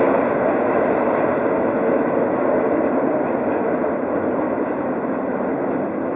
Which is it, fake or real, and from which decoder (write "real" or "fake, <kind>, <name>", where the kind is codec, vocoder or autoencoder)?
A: real